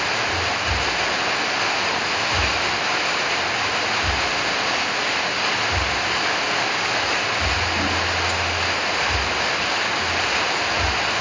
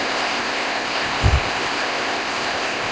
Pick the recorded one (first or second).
first